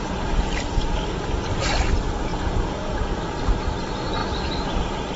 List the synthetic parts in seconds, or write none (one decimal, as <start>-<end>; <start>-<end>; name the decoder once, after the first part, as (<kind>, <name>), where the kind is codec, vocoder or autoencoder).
2.3-3.2 (vocoder, Vocos)